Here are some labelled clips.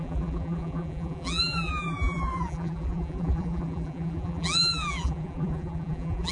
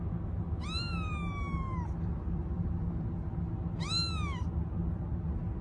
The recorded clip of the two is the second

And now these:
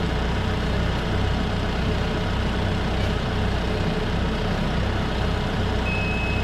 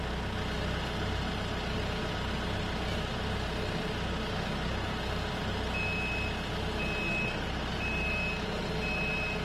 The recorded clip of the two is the second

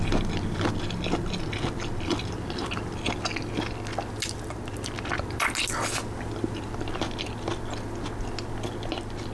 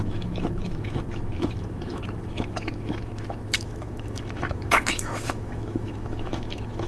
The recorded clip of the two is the first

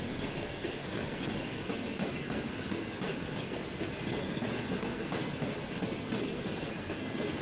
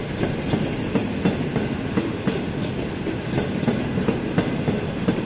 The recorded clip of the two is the second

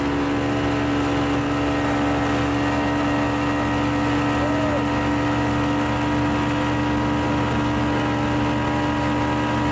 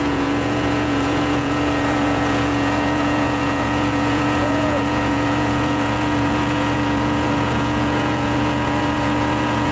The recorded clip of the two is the first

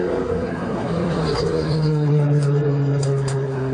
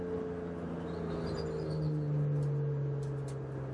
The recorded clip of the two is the second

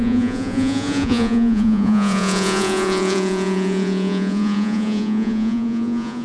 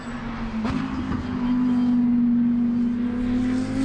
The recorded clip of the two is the second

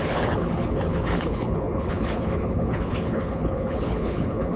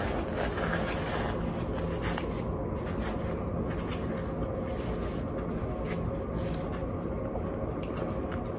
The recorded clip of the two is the second